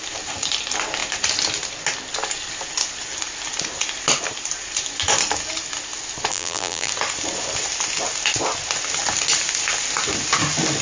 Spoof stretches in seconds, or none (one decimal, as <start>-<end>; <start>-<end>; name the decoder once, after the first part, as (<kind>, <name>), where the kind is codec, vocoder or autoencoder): 6.3-6.9 (vocoder, BigVGAN v2)